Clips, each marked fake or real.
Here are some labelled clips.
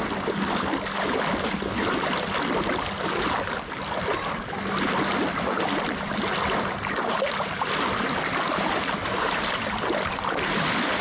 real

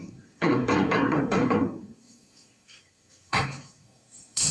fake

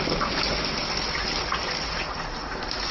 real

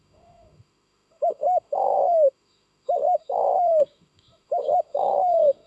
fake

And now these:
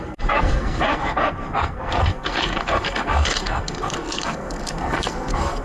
fake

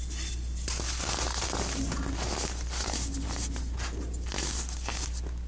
real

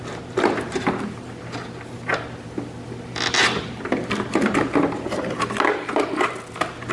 real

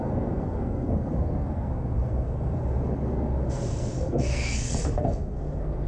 fake